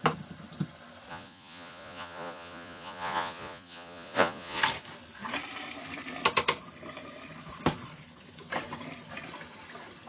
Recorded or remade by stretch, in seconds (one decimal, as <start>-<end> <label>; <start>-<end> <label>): 0.0-1.1 recorded; 1.1-4.6 remade; 4.6-10.1 recorded